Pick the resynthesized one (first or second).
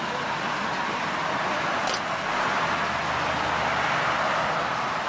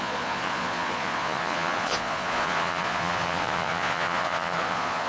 second